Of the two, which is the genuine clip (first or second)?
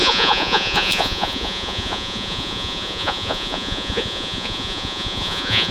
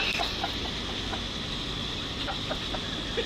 second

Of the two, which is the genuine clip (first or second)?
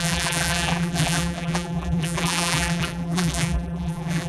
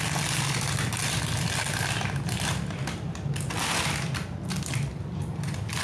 second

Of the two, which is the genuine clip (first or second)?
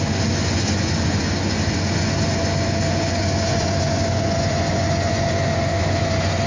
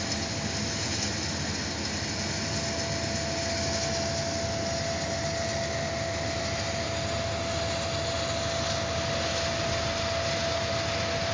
second